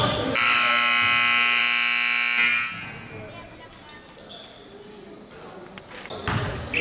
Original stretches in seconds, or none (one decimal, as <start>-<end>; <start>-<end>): 0.0-6.8